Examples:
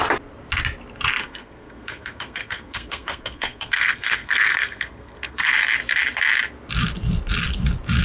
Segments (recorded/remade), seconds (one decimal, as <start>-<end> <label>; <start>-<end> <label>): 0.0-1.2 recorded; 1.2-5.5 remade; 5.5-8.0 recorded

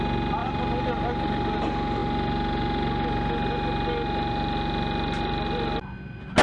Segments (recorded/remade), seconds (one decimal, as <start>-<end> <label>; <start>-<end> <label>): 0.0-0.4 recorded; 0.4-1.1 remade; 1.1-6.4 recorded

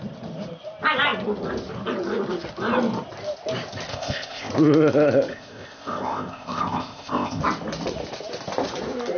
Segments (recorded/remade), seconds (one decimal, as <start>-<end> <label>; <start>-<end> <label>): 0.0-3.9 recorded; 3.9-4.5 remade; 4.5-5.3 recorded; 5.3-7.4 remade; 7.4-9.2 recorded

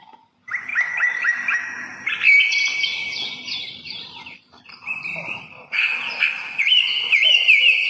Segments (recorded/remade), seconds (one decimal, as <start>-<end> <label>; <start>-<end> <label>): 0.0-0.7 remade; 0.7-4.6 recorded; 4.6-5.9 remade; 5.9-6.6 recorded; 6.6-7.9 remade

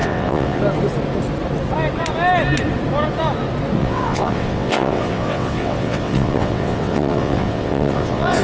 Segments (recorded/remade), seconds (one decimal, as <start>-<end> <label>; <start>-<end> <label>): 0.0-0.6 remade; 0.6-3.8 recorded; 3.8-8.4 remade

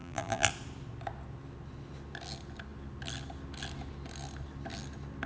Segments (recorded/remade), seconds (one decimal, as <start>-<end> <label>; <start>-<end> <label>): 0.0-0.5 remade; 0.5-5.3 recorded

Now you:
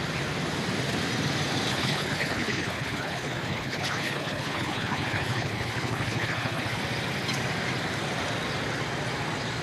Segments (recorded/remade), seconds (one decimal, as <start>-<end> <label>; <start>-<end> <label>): 0.0-1.7 recorded; 1.7-6.8 remade; 6.8-9.6 recorded